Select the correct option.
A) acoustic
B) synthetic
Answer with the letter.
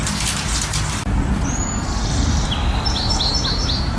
A